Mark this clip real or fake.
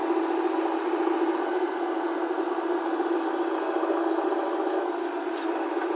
real